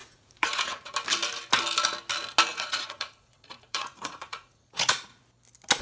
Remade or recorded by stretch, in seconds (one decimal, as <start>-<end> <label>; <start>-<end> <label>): 0.0-0.9 remade; 0.9-2.5 recorded; 2.5-5.2 remade; 5.2-5.8 recorded